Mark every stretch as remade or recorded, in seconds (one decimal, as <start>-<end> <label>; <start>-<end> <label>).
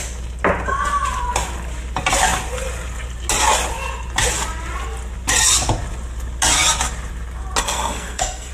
0.0-7.6 recorded; 7.6-8.5 remade